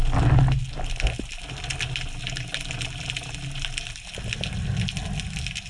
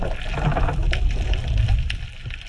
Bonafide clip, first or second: first